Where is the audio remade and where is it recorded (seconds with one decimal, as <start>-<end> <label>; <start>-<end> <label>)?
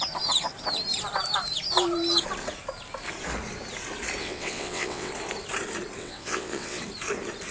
0.0-4.2 recorded; 4.2-5.1 remade; 5.1-6.0 recorded; 6.0-6.8 remade; 6.8-7.5 recorded